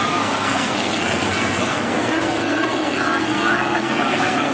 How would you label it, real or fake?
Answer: fake